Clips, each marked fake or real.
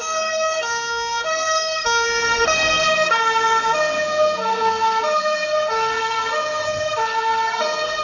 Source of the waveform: fake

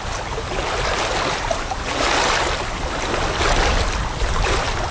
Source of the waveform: real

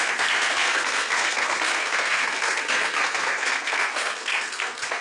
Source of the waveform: fake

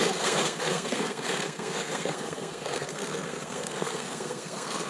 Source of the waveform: fake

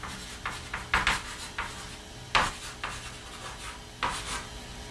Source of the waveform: real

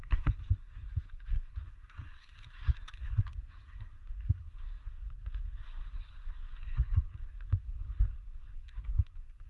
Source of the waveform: fake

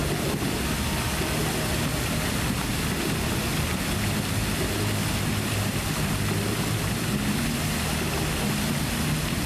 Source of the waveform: real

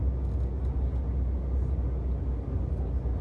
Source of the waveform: real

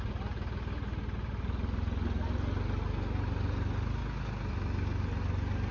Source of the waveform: real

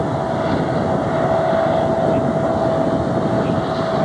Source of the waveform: real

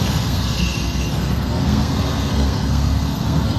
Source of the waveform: fake